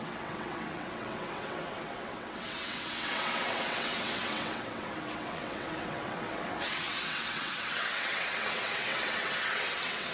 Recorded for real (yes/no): no